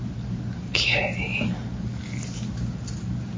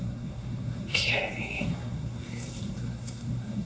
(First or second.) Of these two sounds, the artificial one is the second